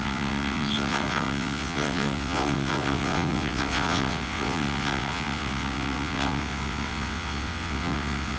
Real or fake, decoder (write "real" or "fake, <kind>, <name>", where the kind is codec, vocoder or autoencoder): fake, vocoder, WaveNeXt